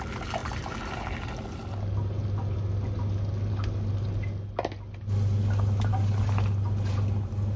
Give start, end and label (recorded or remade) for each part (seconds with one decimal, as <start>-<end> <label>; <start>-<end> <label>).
0.0-7.6 recorded

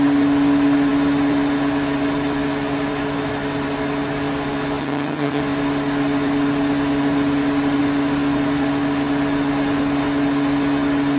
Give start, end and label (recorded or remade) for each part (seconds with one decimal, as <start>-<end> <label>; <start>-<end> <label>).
0.0-4.8 recorded; 4.8-5.4 remade; 5.4-11.2 recorded

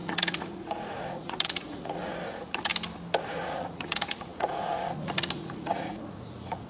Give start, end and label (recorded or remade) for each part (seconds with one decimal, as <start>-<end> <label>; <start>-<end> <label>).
0.0-2.7 remade; 2.7-3.2 recorded; 3.2-6.7 remade